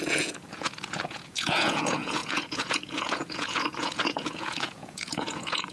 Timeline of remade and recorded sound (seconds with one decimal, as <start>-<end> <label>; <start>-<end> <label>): 0.0-5.7 remade